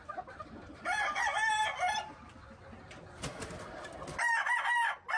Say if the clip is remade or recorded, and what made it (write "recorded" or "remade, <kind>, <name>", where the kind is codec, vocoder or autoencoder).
recorded